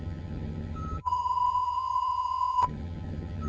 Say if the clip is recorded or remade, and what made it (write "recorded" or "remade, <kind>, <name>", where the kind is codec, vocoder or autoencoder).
remade, vocoder, HiFi-GAN